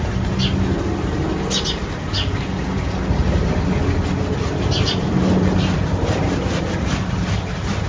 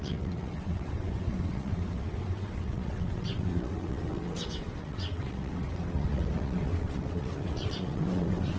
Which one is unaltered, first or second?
first